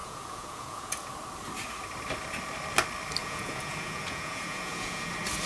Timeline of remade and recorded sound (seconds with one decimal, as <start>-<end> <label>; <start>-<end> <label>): 0.0-1.1 remade; 1.1-3.2 recorded; 3.2-5.1 remade; 5.1-5.5 recorded